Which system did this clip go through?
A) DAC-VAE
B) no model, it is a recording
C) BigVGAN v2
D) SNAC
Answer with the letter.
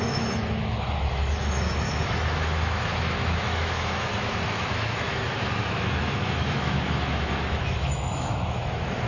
A